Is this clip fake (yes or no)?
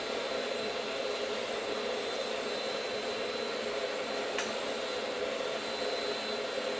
no